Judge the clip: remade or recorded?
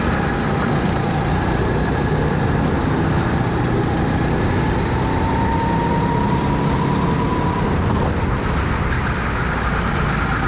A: recorded